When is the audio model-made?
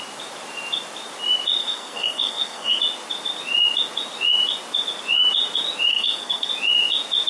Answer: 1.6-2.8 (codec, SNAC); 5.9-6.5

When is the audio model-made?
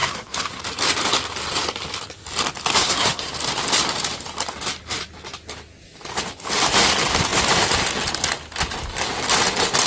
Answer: 0.0-0.6 (codec, SNAC); 2.8-3.3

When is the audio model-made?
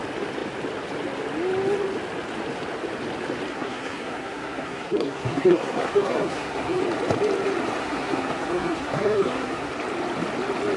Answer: 3.5-6.8 (codec, SNAC); 7.8-9.7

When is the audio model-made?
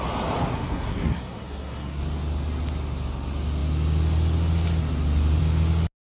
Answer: 0.5-2.0 (codec, SNAC)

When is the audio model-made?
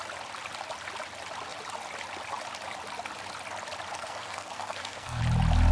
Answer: 3.9-5.2 (codec, SNAC)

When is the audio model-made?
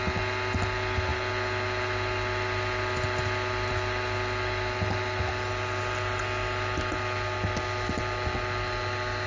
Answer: none